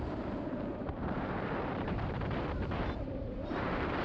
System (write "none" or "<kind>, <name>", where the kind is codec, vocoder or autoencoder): vocoder, BigVGAN v2